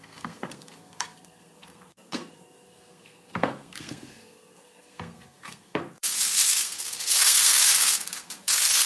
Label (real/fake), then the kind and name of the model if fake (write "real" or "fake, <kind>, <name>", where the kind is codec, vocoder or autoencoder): fake, codec, SNAC